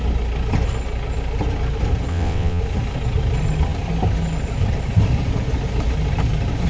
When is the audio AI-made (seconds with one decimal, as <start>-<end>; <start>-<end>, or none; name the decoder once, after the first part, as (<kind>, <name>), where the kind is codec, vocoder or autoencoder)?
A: 2.1-2.6 (vocoder, WaveNeXt)

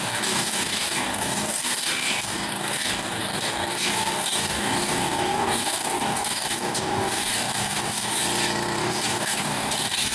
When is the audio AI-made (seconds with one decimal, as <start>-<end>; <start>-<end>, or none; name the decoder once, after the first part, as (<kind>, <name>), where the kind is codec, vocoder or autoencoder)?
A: 0.0-8.2 (codec, DAC); 8.8-10.1